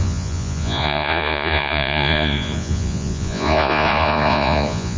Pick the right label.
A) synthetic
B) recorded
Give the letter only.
A